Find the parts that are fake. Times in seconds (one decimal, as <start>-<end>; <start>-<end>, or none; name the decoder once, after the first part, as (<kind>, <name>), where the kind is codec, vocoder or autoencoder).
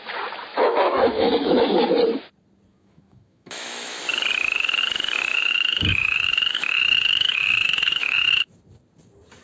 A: 0.5-1.3 (autoencoder, DAC-VAE); 2.7-4.0; 5.3-8.5